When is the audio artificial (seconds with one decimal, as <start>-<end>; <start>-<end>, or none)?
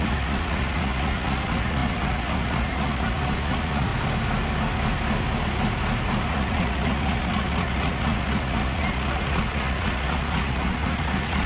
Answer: 0.0-3.9; 6.3-11.5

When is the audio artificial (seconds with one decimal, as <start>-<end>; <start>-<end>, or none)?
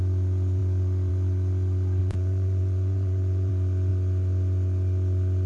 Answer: 2.0-3.5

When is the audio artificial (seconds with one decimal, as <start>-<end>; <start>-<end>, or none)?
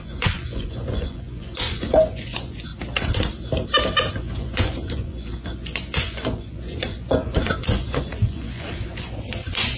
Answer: 0.0-2.7; 4.1-9.8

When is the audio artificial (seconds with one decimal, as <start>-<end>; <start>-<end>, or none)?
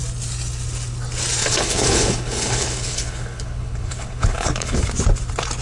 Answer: 1.4-4.8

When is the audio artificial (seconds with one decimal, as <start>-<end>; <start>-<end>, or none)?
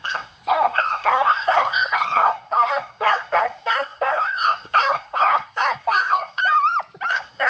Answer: 0.0-6.4; 7.1-7.5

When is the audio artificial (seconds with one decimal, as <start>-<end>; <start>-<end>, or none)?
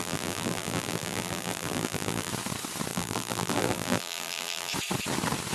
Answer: 0.0-2.3; 2.9-4.7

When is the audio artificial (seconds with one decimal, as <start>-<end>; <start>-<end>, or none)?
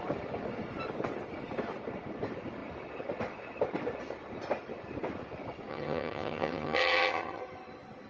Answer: 5.7-7.4